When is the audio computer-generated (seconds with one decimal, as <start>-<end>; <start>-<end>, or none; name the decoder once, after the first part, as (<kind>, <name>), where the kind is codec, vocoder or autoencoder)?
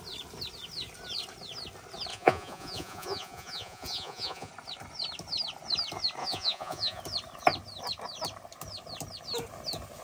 2.1-4.5 (vocoder, Vocos); 6.2-7.0